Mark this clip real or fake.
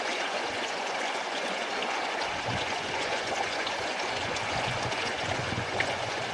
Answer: fake